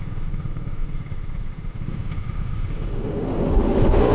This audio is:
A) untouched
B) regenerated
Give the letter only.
B